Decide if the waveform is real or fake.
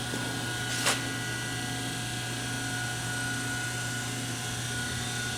real